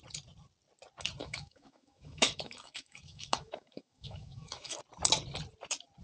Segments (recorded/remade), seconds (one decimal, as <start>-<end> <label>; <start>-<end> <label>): 0.0-1.2 recorded; 1.2-4.8 remade; 4.8-6.0 recorded

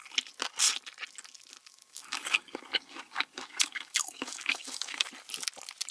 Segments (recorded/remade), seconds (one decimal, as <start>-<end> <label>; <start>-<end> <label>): 0.0-1.6 recorded; 1.6-5.1 remade; 5.1-5.9 recorded

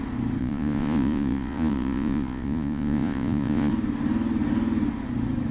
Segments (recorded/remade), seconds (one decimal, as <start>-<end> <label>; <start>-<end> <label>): 0.0-0.4 recorded; 0.4-3.7 remade; 3.7-5.5 recorded

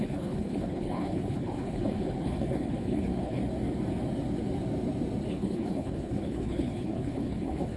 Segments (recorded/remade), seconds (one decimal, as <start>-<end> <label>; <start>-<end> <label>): 0.0-3.4 remade; 3.4-5.3 recorded; 5.3-7.8 remade